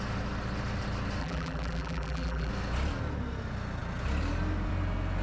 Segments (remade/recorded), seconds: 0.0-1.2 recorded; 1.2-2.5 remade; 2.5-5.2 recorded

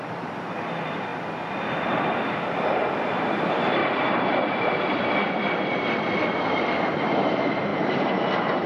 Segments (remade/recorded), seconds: 0.0-1.1 remade; 1.1-1.9 recorded; 1.9-3.8 remade; 3.8-5.2 recorded; 5.2-8.7 remade